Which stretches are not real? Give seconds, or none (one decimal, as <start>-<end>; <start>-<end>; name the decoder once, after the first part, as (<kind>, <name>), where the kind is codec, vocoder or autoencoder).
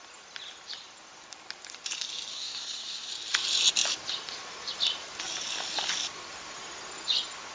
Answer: 2.3-3.1 (codec, SNAC)